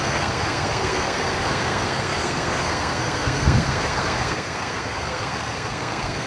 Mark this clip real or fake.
fake